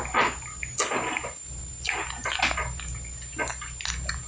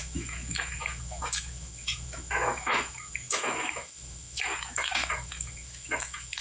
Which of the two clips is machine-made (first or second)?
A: second